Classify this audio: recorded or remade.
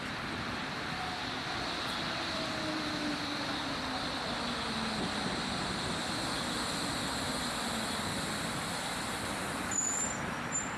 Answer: recorded